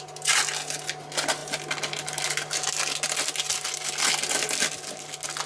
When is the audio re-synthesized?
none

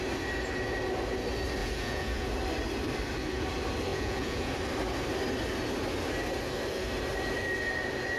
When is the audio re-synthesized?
1.6-2.3 (vocoder, Vocos); 3.9-4.5

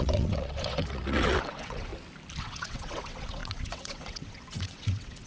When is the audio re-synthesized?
0.0-1.9 (vocoder, WaveNeXt); 2.4-5.3

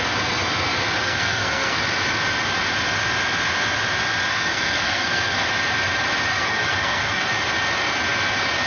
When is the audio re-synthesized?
1.0-1.8 (codec, SNAC); 4.3-5.5; 6.3-7.3

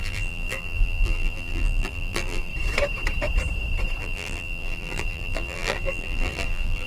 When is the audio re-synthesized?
0.0-2.5 (vocoder, BigVGAN v2); 4.0-6.9